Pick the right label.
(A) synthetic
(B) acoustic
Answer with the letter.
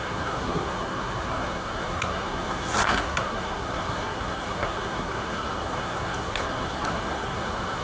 A